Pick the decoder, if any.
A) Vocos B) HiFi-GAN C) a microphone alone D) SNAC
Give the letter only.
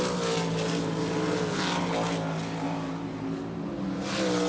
C